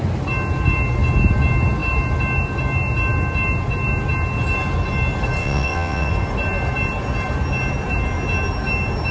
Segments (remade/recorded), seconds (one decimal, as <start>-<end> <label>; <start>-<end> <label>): 0.0-5.4 recorded; 5.4-6.1 remade; 6.1-9.1 recorded